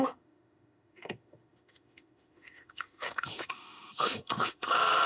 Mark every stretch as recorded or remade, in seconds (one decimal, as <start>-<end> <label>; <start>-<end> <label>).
0.0-5.1 remade